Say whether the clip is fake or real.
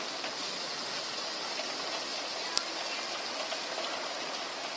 real